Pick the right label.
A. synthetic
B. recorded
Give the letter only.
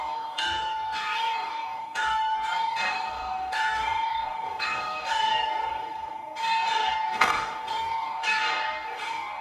A